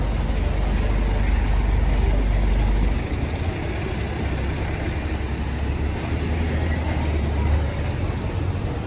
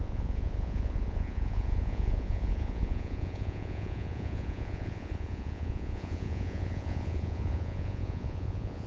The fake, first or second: second